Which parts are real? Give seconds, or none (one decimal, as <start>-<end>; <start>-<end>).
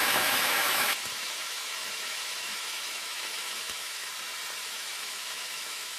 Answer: 4.1-4.6